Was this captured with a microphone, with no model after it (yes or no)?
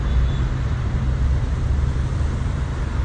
yes